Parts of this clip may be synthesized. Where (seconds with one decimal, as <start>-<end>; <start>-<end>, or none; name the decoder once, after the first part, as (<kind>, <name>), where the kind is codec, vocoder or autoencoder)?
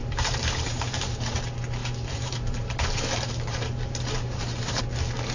0.0-1.4 (vocoder, BigVGAN v2); 1.8-4.8